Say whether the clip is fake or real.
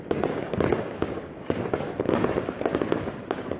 fake